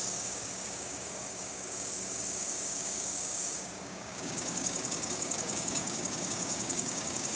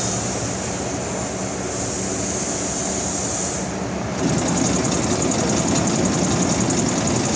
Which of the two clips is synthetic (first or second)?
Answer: first